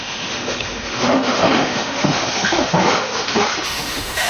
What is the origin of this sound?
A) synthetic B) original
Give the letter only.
A